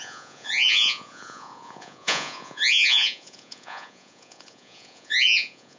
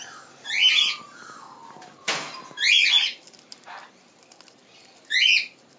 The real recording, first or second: second